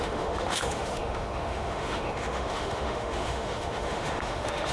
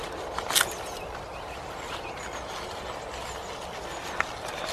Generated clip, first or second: first